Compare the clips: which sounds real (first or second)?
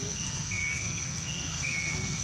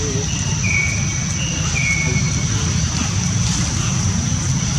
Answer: second